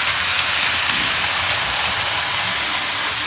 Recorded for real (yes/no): yes